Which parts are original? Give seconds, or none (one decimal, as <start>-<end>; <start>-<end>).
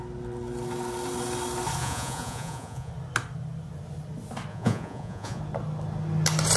0.0-1.8; 2.9-4.5; 5.4-6.6